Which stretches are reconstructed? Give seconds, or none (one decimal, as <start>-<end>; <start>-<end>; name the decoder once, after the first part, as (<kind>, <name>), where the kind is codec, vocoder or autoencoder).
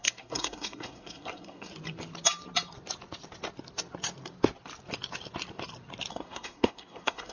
0.0-1.7 (codec, SNAC); 6.1-7.3